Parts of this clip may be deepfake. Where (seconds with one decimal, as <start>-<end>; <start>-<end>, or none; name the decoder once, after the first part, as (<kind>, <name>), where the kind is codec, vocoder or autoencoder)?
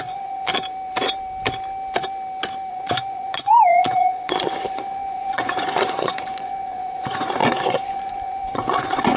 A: 0.0-0.5 (vocoder, Vocos); 2.7-9.2